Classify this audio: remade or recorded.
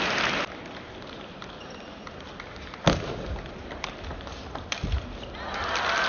recorded